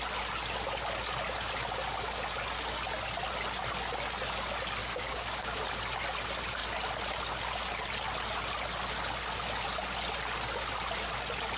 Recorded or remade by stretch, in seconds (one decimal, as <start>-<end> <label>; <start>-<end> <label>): 0.0-4.8 recorded; 4.8-5.6 remade; 5.6-11.6 recorded